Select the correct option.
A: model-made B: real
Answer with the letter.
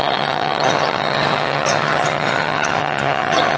A